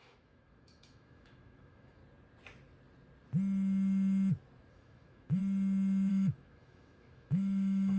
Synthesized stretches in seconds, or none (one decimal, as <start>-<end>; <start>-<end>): 0.0-2.0; 4.7-5.4; 6.1-8.0